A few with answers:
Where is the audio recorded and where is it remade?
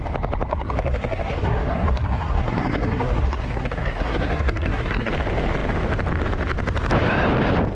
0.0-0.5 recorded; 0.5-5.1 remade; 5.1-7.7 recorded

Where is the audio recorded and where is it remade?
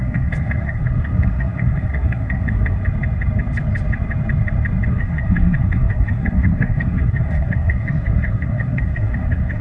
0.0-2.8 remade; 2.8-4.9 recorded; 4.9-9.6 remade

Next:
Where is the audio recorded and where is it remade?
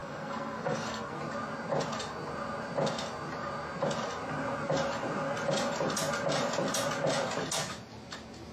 0.0-1.2 remade; 1.2-8.5 recorded